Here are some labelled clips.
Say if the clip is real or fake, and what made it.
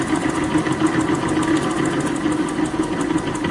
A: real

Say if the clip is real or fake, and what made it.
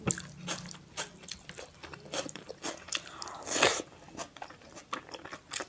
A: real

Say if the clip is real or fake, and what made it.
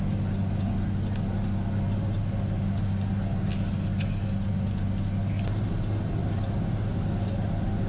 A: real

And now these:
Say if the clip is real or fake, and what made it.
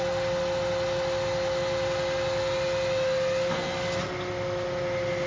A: real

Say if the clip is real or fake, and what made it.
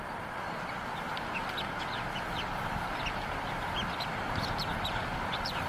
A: fake, vocoder, BigVGAN v2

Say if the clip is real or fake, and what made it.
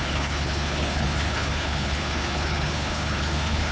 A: fake, codec, HILCodec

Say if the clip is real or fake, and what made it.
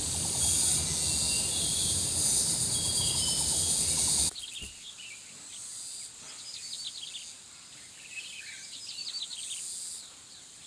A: real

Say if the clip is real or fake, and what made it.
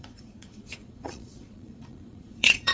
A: fake, vocoder, Vocos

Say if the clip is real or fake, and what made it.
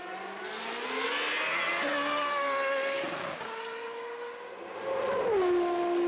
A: real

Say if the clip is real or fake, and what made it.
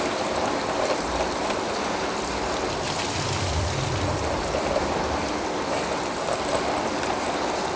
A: real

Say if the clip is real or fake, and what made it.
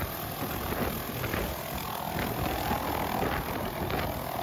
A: real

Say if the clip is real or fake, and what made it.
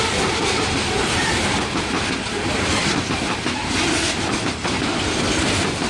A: fake, vocoder, BigVGAN v2